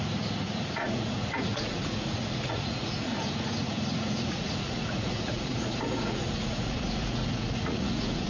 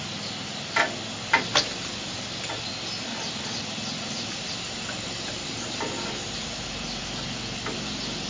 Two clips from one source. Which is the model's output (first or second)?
first